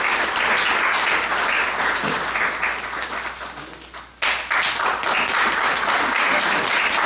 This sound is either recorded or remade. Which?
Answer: recorded